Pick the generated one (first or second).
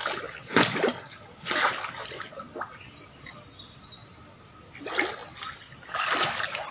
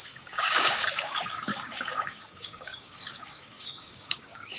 second